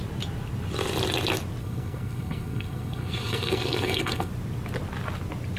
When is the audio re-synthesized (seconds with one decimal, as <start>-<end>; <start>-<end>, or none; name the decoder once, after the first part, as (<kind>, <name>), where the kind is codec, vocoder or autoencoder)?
1.6-4.3 (codec, SNAC)